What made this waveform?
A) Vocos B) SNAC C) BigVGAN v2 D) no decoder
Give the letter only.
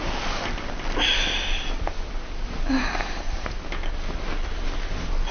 D